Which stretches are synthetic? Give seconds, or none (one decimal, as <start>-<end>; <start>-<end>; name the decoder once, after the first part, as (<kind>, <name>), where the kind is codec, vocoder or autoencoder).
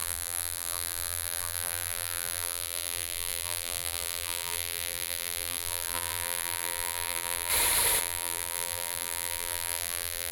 0.0-7.5 (vocoder, BigVGAN v2); 8.0-10.3